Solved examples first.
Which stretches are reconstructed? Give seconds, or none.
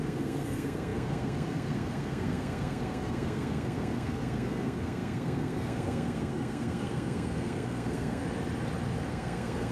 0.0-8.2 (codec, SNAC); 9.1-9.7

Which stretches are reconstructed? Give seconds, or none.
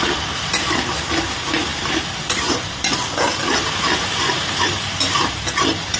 none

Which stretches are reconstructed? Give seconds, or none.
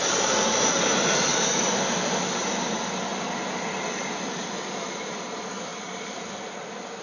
0.0-1.3 (vocoder, BigVGAN v2); 2.0-3.1; 3.9-7.0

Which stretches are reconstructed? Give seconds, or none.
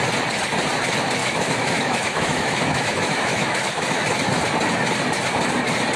1.2-4.0 (autoencoder, DAC-VAE)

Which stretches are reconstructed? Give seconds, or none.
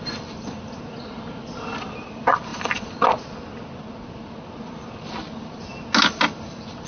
none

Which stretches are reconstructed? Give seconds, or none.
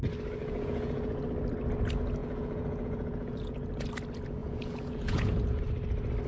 0.4-1.2 (vocoder, Vocos); 2.2-3.9; 4.4-5.6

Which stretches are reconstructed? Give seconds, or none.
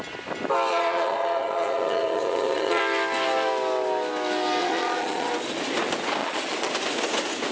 0.7-2.8 (vocoder, Vocos); 4.6-5.3; 6.2-6.7